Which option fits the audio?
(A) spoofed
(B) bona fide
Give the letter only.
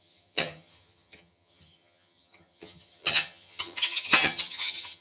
A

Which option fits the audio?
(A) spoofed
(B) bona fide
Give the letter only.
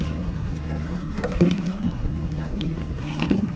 A